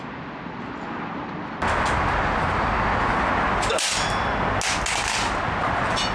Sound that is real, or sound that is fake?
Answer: real